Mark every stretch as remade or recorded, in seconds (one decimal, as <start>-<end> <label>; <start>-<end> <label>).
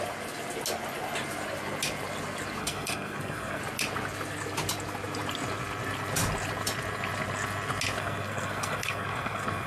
0.0-2.6 recorded; 2.6-3.6 remade; 3.6-8.0 recorded; 8.0-9.7 remade